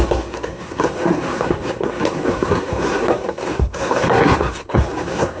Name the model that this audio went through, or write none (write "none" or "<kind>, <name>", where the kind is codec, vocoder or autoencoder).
codec, SNAC